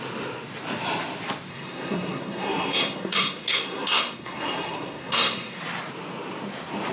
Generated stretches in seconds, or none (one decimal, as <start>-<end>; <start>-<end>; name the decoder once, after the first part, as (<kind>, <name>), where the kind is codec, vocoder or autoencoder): 1.5-5.6 (codec, SNAC)